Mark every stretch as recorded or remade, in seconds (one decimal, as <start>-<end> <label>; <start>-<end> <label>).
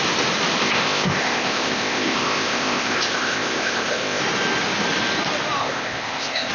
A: 0.0-0.6 recorded; 0.6-4.2 remade; 4.2-5.6 recorded; 5.6-6.5 remade